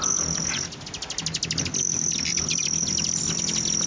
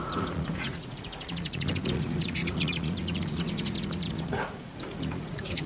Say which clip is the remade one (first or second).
second